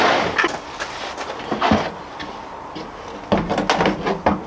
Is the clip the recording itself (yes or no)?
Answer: yes